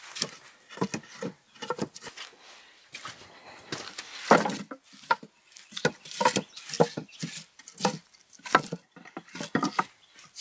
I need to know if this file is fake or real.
real